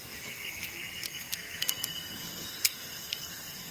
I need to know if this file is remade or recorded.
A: remade